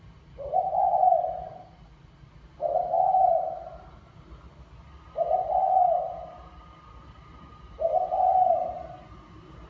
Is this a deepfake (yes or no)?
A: no